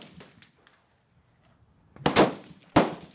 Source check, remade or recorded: recorded